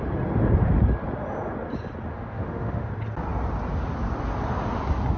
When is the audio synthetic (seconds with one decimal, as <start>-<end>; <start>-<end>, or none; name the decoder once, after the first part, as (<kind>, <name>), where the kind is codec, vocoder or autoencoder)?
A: 2.1-2.9 (autoencoder, DAC-VAE)